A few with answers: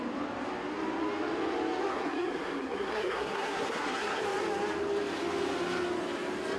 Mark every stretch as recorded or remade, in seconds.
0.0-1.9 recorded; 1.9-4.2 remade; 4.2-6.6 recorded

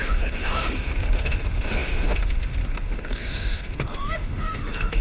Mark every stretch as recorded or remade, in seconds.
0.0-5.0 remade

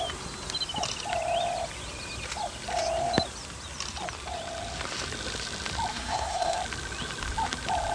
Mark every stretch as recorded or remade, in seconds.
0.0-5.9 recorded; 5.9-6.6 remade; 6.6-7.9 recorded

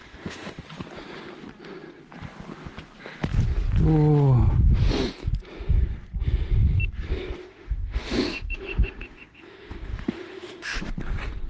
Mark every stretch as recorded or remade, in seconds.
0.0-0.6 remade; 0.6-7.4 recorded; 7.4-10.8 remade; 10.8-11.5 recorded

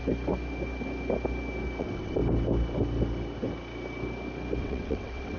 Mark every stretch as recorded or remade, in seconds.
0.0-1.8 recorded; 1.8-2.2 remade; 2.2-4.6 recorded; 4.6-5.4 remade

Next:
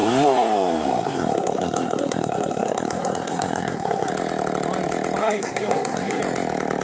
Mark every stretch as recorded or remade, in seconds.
0.0-4.1 remade; 4.1-5.2 recorded; 5.2-6.2 remade; 6.2-6.8 recorded